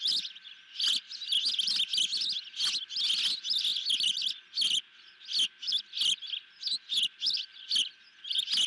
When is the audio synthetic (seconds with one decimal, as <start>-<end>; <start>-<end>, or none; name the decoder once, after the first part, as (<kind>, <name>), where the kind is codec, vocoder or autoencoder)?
none